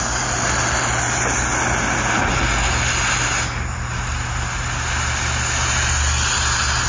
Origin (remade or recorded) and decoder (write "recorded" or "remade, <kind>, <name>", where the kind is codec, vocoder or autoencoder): recorded